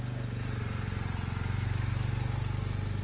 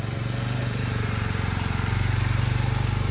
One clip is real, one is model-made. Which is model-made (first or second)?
second